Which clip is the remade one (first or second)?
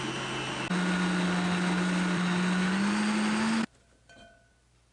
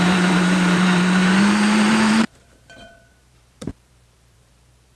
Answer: second